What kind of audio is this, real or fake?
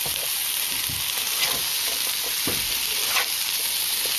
fake